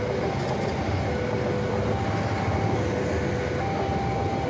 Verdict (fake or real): real